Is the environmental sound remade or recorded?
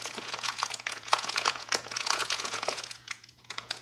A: remade